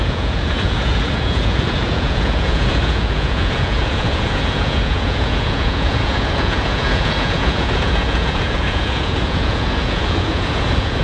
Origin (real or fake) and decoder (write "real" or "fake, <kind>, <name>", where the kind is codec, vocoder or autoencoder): fake, vocoder, Vocos